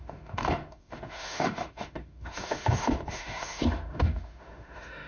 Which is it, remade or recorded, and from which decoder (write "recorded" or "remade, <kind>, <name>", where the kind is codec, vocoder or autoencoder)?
remade, autoencoder, DAC-VAE